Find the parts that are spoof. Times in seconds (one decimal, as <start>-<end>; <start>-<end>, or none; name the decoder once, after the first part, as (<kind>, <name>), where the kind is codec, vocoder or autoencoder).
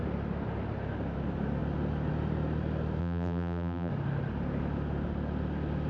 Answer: 3.0-3.9 (vocoder, BigVGAN v2)